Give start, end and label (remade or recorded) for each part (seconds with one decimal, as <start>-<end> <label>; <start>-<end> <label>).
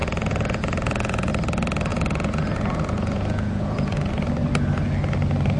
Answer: 0.0-1.3 remade; 1.3-1.9 recorded; 1.9-4.1 remade; 4.1-5.6 recorded